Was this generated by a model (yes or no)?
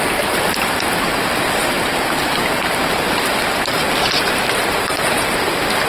yes